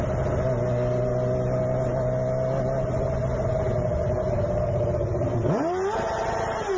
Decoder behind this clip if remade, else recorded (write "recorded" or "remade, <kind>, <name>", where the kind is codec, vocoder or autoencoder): recorded